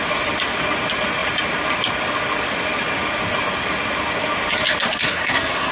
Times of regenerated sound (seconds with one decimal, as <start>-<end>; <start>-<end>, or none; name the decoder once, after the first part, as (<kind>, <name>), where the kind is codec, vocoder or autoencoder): 4.8-5.7 (codec, SNAC)